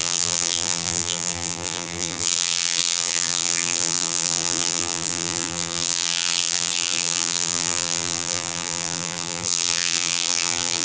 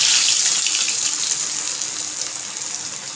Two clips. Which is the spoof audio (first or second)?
first